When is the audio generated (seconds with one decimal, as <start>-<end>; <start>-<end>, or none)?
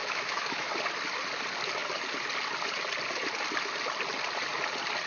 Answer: 0.0-0.7